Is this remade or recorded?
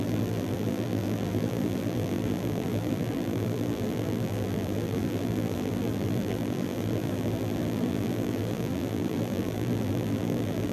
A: remade